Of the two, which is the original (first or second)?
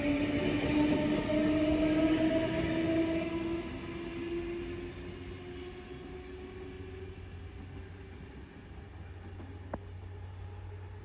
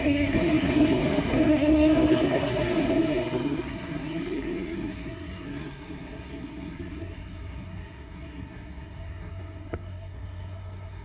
first